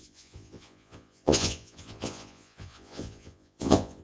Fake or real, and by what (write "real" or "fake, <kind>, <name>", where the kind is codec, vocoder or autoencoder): fake, vocoder, Vocos